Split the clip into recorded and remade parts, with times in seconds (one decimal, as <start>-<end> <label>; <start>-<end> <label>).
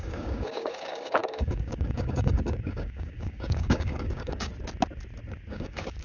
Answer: 0.0-4.5 remade; 4.5-5.5 recorded; 5.5-6.0 remade